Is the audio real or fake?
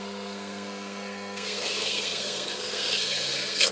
fake